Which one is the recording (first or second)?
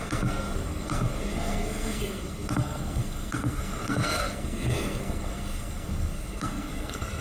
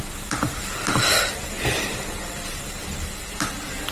second